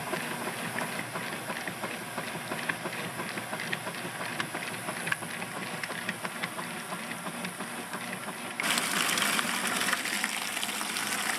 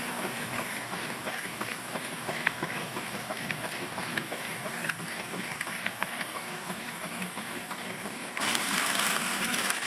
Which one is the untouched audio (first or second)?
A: first